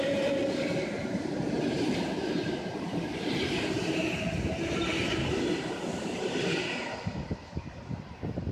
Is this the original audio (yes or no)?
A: no